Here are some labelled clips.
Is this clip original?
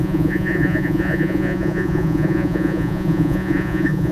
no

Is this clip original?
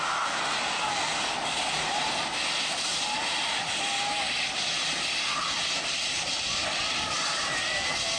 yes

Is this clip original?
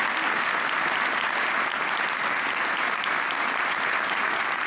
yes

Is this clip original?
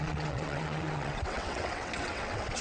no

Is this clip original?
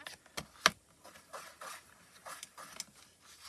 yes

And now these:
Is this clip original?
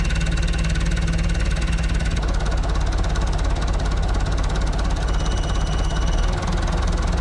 yes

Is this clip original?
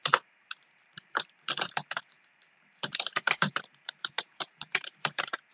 no